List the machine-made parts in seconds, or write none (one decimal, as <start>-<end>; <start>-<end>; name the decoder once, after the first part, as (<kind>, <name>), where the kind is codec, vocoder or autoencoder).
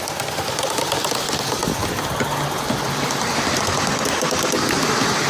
none